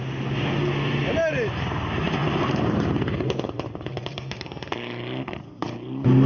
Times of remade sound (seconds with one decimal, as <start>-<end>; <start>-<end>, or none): none